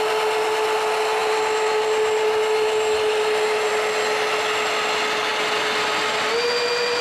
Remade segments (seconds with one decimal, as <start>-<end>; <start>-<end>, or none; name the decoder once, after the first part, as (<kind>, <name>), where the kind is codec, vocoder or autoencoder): none